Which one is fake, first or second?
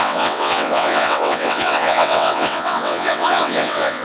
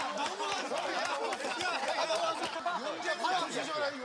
first